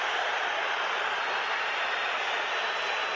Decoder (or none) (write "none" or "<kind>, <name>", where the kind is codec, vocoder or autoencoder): none